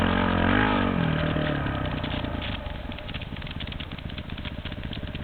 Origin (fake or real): real